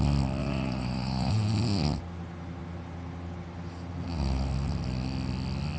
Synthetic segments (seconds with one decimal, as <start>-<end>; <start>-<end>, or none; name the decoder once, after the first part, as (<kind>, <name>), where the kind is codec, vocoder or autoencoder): 0.4-1.3 (vocoder, Vocos)